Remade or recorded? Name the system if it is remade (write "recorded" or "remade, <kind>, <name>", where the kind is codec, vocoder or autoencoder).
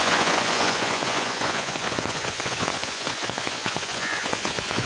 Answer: remade, vocoder, Vocos